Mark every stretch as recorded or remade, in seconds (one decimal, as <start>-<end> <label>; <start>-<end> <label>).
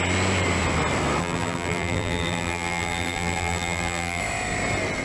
0.0-1.2 recorded; 1.2-4.2 remade; 4.2-5.0 recorded